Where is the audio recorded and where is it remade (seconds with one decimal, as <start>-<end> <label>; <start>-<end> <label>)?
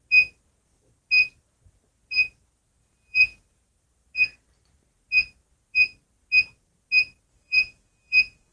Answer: 0.0-2.8 recorded; 2.8-3.6 remade; 3.6-7.0 recorded; 7.0-8.5 remade